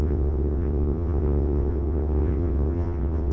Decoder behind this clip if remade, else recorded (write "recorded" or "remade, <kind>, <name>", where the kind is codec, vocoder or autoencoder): remade, vocoder, WaveNeXt